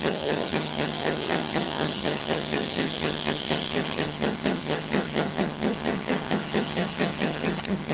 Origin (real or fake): fake